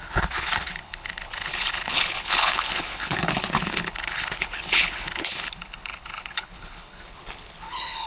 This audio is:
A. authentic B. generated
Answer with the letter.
B